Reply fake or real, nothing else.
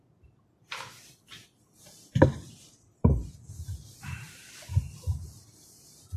fake